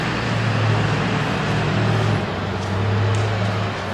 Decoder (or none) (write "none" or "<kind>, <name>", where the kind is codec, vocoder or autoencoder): none